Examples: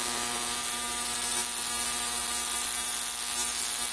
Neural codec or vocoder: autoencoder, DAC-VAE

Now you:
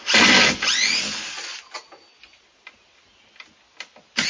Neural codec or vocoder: none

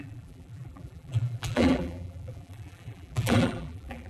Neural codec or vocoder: vocoder, BigVGAN v2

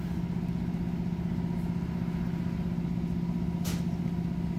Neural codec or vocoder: none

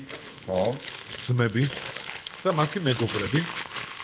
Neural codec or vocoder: codec, HILCodec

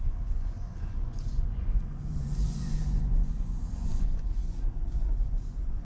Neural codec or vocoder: vocoder, Vocos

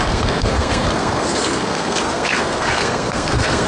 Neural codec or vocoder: codec, SNAC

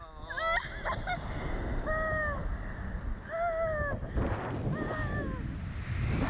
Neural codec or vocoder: none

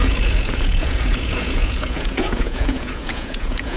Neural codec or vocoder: vocoder, Vocos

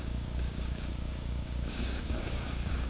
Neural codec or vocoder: codec, DAC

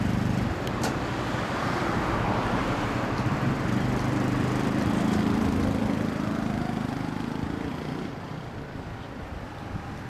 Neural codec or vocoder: vocoder, BigVGAN v2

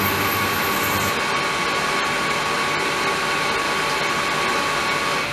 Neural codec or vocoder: none